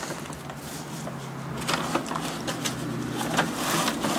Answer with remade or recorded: recorded